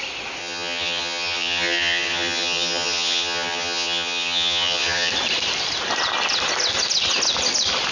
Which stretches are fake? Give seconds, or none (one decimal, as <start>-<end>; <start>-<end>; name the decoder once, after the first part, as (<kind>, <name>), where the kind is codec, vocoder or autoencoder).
0.4-5.1 (vocoder, HiFi-GAN)